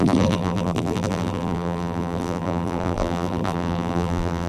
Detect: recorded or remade remade